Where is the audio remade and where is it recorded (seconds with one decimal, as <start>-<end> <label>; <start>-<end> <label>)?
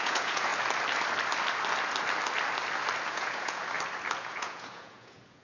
0.0-0.5 remade; 0.5-3.1 recorded; 3.1-3.6 remade; 3.6-4.2 recorded; 4.2-5.4 remade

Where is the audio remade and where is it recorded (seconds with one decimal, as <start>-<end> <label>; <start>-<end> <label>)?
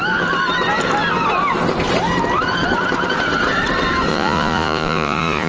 0.0-4.1 recorded; 4.1-5.5 remade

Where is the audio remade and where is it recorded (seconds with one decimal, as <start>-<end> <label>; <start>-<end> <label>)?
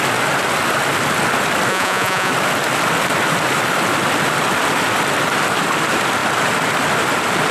0.0-1.7 recorded; 1.7-2.3 remade; 2.3-7.5 recorded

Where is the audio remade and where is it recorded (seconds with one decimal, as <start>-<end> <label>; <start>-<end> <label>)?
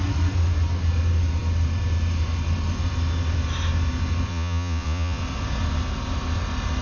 0.0-4.3 recorded; 4.3-5.2 remade; 5.2-6.8 recorded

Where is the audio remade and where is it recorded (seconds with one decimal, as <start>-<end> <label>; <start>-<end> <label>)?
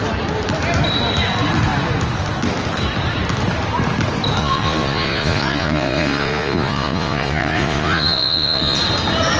0.0-4.4 recorded; 4.4-8.8 remade; 8.8-9.4 recorded